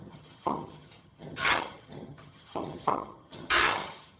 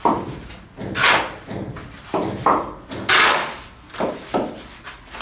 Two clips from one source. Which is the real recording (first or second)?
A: second